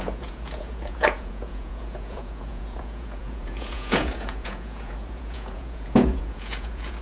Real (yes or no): no